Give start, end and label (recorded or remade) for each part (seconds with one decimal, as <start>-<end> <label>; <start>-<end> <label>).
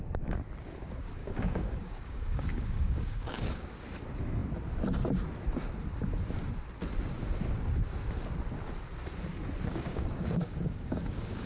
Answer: 0.0-1.2 recorded; 1.2-3.7 remade; 3.7-9.7 recorded; 9.7-11.5 remade